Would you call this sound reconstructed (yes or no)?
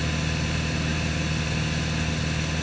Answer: no